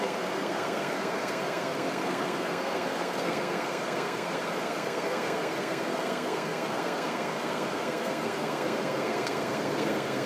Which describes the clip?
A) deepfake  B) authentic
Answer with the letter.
A